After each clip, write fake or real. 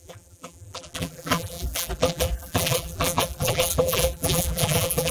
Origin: fake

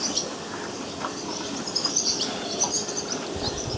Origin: fake